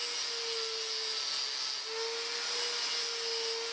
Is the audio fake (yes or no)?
no